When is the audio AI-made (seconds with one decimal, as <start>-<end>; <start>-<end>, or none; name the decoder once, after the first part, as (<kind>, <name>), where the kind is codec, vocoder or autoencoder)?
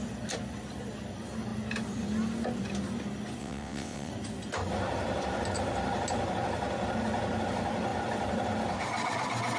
3.4-4.1 (vocoder, WaveNeXt)